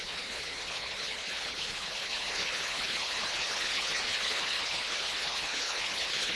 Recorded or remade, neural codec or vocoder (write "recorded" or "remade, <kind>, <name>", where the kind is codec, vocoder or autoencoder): remade, codec, HILCodec